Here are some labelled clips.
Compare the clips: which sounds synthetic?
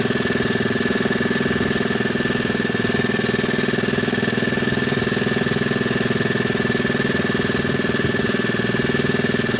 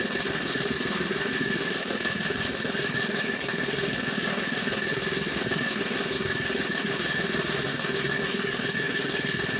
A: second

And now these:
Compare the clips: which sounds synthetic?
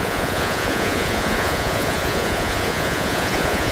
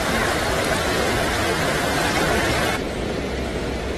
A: first